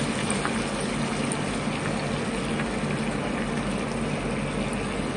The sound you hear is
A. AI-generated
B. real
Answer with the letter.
B